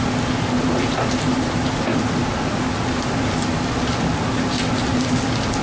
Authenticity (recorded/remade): recorded